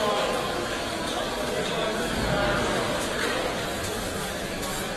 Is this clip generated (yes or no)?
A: yes